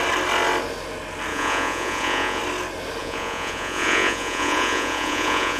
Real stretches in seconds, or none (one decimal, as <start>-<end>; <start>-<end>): 0.0-1.3; 2.4-3.0